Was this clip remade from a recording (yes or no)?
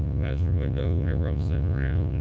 yes